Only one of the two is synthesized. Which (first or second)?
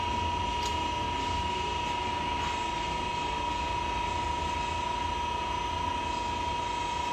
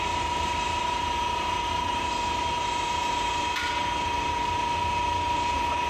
second